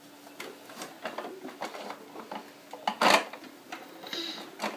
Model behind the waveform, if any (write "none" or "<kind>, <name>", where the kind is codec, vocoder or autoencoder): none